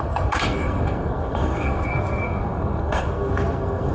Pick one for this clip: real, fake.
fake